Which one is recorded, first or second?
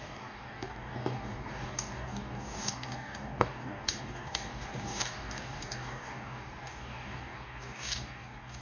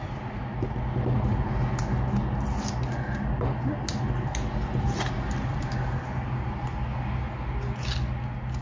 second